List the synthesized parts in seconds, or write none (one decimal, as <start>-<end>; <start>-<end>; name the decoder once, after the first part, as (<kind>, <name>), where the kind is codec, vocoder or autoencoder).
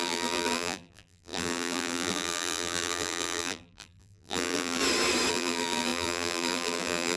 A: 0.0-4.8 (vocoder, BigVGAN v2); 5.3-7.2